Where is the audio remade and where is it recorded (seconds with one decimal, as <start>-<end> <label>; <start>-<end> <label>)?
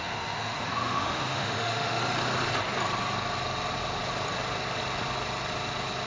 0.0-2.0 remade; 2.0-6.1 recorded